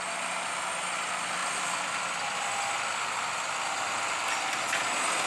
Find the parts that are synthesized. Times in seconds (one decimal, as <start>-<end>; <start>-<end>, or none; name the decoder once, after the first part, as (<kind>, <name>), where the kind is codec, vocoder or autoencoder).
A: none